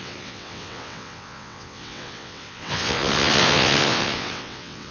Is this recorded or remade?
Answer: remade